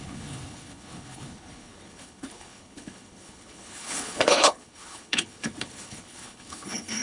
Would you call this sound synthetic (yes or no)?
yes